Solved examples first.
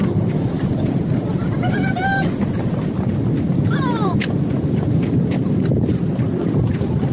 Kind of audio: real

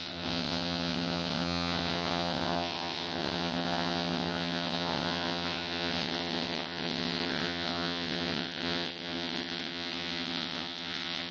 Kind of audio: fake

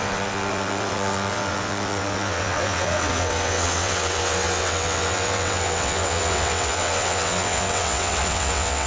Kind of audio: fake